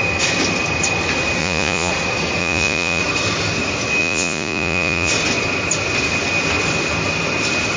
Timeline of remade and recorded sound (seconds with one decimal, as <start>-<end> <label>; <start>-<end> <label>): 0.0-1.4 recorded; 1.4-1.9 remade; 1.9-2.4 recorded; 2.4-3.0 remade; 3.0-4.0 recorded; 4.0-5.1 remade; 5.1-7.8 recorded